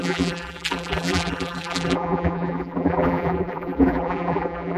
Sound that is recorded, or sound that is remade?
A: remade